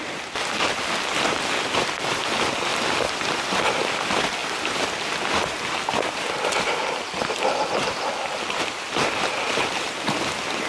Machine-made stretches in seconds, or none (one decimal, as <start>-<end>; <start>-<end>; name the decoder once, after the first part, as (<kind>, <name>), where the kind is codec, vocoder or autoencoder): none